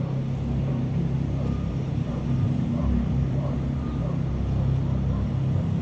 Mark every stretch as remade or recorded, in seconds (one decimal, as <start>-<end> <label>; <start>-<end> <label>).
0.0-0.7 recorded; 0.7-4.0 remade; 4.0-5.8 recorded

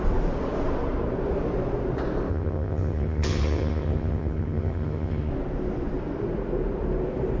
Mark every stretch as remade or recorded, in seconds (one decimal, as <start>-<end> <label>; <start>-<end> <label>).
0.0-2.3 recorded; 2.3-5.3 remade; 5.3-7.4 recorded

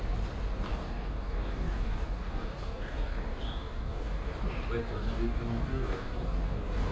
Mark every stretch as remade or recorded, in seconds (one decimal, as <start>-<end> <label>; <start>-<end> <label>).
0.0-0.7 recorded; 0.7-4.3 remade; 4.3-4.8 recorded; 4.8-6.9 remade

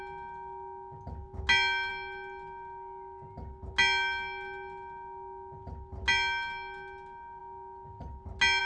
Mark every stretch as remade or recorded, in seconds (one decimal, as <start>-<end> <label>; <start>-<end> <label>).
0.0-8.6 recorded

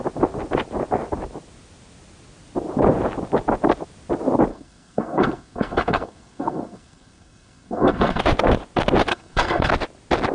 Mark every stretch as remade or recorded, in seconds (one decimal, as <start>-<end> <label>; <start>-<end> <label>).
0.0-4.5 recorded; 4.5-8.2 remade; 8.2-9.1 recorded; 9.1-9.7 remade; 9.7-10.3 recorded